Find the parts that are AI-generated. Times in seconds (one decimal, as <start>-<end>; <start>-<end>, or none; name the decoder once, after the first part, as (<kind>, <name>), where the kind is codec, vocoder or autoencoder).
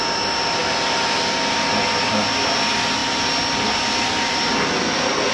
none